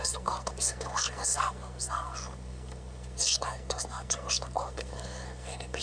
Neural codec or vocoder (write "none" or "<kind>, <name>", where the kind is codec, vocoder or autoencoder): codec, SNAC